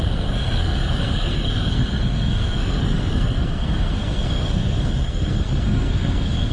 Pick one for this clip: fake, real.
fake